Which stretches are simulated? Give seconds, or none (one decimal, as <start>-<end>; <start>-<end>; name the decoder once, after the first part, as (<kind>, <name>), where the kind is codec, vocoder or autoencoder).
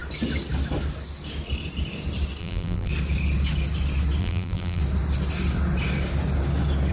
2.4-2.9 (vocoder, BigVGAN v2); 4.2-4.8